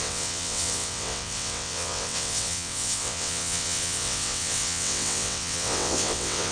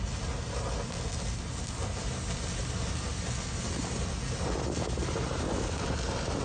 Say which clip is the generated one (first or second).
first